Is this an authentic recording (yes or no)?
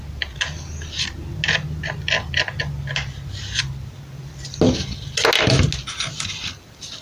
yes